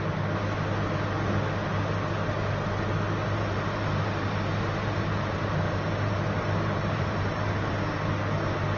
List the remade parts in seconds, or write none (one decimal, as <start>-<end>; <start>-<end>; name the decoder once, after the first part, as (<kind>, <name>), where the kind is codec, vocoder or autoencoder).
3.2-7.7 (vocoder, BigVGAN v2)